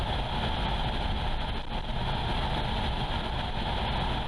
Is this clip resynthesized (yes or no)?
no